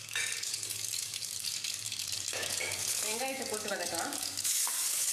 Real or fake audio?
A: fake